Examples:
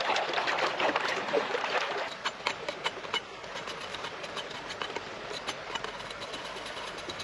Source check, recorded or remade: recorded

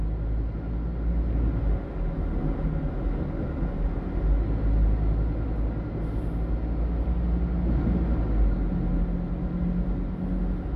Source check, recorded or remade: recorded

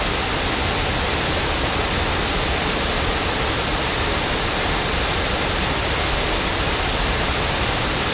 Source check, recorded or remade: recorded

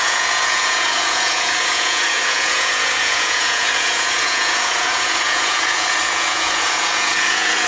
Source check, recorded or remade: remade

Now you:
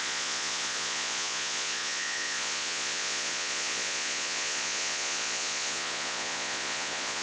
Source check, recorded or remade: remade